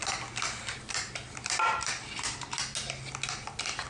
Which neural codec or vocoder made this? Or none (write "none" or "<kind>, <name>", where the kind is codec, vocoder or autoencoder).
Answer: none